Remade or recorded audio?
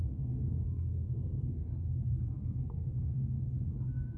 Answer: remade